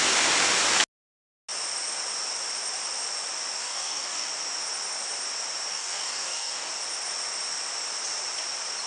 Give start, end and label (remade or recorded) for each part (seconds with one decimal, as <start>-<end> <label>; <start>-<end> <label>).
0.0-3.6 recorded; 3.6-4.3 remade; 4.3-5.7 recorded; 5.7-6.7 remade; 6.7-8.9 recorded